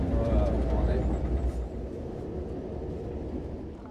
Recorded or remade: recorded